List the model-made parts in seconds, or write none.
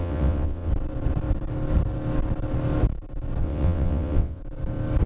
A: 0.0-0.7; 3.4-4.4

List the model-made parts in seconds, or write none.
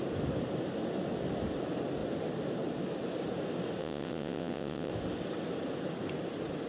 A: 3.8-4.9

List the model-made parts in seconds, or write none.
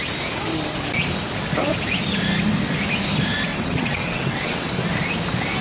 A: 3.5-4.7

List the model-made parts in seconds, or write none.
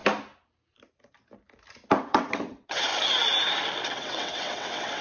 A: 2.0-2.9; 3.9-5.0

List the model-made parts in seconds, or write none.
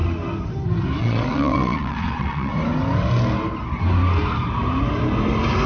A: 1.0-2.5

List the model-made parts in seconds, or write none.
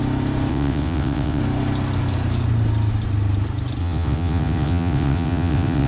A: 0.5-1.4; 3.8-5.9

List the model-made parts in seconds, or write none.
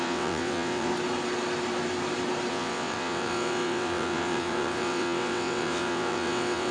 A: 0.0-0.9; 2.5-6.7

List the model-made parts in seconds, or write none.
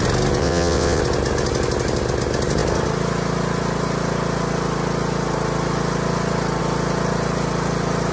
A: 0.4-1.0